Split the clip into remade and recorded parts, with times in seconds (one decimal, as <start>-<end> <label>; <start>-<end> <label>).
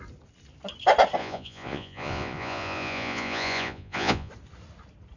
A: 0.0-1.2 recorded; 1.2-4.3 remade; 4.3-5.2 recorded